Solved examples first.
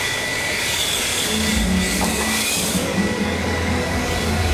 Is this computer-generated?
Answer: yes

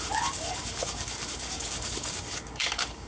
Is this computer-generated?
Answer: yes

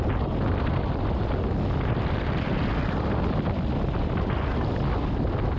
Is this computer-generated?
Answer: no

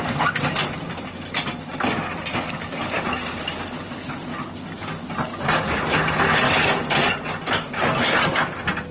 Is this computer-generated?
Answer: no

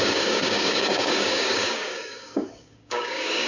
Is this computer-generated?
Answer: yes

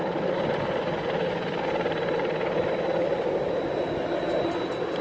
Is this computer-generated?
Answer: no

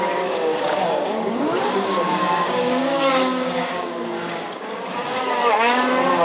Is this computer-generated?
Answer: yes